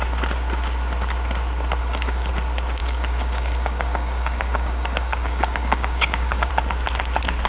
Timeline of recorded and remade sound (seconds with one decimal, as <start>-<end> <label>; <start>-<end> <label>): 0.0-1.8 recorded; 1.8-2.3 remade; 2.3-2.8 recorded; 2.8-6.5 remade; 6.5-7.5 recorded